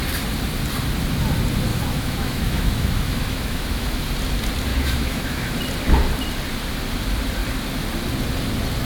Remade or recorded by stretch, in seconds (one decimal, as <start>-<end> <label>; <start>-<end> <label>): 0.0-1.7 recorded; 1.7-4.0 remade; 4.0-4.7 recorded; 4.7-5.5 remade; 5.5-8.9 recorded